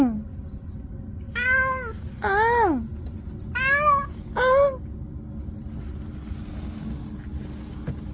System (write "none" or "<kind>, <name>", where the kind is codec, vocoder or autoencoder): none